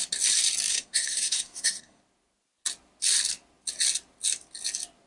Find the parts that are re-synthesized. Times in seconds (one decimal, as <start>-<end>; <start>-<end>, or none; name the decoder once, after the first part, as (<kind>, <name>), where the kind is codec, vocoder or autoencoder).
0.7-2.0 (codec, SNAC)